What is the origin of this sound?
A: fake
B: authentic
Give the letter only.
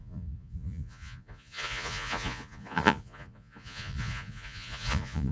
A